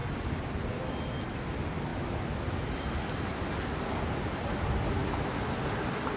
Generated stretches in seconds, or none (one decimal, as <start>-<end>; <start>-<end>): 0.0-0.9